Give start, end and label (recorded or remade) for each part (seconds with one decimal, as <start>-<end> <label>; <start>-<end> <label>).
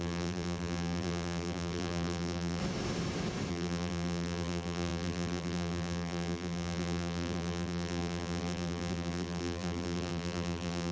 0.0-2.6 remade; 2.6-3.5 recorded; 3.5-10.9 remade